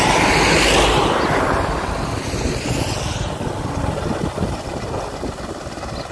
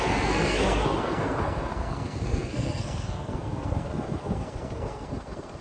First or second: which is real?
first